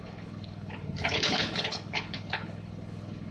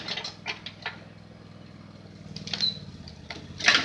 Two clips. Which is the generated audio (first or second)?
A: first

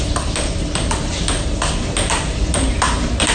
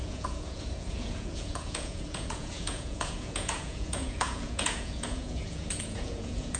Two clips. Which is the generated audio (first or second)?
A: second